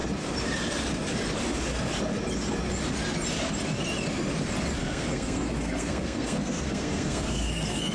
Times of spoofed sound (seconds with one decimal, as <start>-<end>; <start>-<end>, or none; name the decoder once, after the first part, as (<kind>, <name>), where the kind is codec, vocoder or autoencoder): 4.8-7.9 (codec, SNAC)